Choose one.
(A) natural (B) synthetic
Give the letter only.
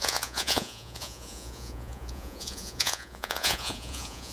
B